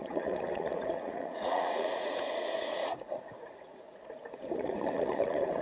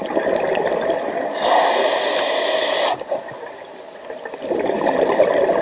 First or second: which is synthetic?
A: first